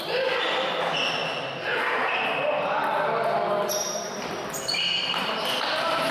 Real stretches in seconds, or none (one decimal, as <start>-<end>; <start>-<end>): 0.0-2.8; 5.3-6.1